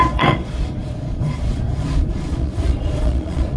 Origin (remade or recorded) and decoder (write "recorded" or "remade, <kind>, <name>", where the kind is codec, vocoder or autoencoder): remade, vocoder, Vocos